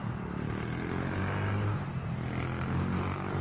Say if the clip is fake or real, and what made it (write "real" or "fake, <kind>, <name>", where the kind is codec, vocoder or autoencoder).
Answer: real